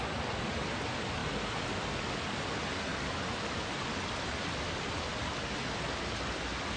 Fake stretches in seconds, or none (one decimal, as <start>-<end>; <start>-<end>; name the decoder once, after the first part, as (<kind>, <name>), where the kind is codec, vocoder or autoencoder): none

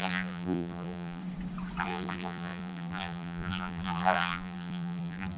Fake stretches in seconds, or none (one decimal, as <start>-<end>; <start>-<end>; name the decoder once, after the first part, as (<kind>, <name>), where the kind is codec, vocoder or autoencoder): 0.0-1.2 (vocoder, BigVGAN v2); 1.8-5.4

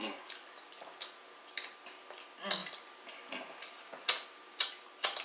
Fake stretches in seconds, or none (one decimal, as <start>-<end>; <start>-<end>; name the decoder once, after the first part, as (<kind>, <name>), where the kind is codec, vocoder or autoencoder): none